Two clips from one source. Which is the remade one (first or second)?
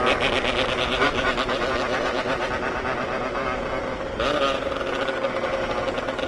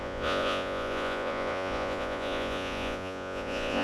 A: second